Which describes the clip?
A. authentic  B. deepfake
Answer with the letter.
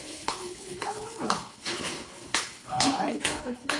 B